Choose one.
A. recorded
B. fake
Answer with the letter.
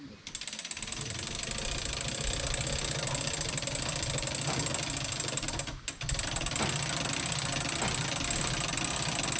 A